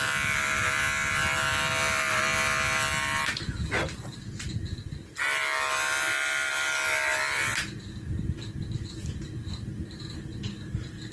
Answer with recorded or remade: recorded